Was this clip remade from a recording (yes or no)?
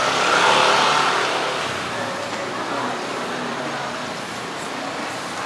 no